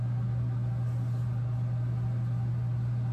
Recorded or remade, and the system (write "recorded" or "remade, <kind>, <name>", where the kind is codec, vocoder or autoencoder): recorded